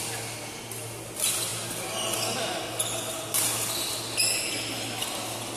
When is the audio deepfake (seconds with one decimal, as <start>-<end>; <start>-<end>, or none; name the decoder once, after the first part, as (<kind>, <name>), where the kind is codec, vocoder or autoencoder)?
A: none